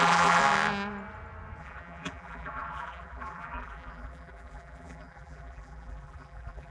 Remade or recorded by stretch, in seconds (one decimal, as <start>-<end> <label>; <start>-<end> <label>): 0.0-0.4 remade; 0.4-1.6 recorded; 1.6-6.7 remade